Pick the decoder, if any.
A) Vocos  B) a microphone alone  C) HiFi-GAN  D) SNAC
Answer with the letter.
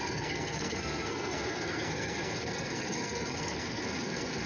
D